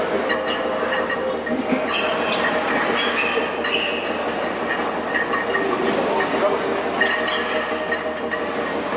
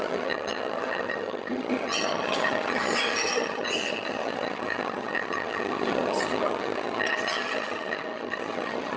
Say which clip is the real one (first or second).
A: first